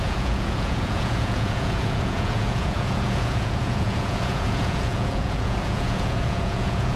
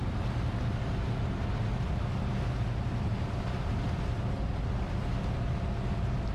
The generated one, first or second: first